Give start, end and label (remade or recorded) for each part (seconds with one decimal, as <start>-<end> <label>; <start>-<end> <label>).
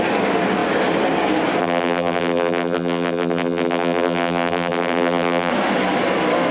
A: 0.0-1.6 recorded; 1.6-5.5 remade; 5.5-6.5 recorded